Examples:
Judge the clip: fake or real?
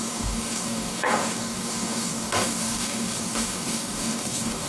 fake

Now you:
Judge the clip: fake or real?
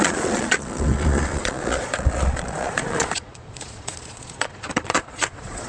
fake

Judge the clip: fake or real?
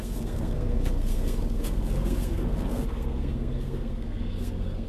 fake